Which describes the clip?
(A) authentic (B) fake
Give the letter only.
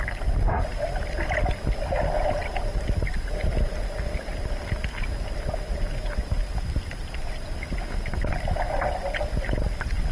A